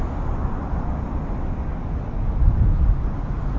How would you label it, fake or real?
real